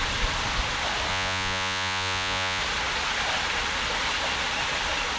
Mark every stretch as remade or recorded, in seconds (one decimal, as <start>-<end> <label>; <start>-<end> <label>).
0.0-1.1 recorded; 1.1-2.6 remade; 2.6-5.2 recorded